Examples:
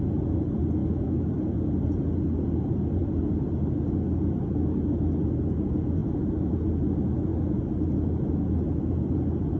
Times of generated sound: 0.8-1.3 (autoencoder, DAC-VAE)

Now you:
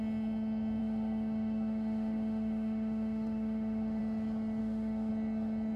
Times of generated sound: 0.8-4.0 (autoencoder, DAC-VAE); 4.6-5.1